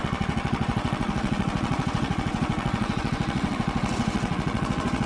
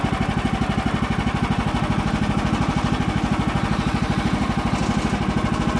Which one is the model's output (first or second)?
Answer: first